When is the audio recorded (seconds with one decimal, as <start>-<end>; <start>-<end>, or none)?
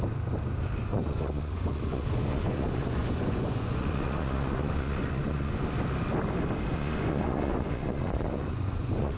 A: 0.0-0.9; 5.6-6.7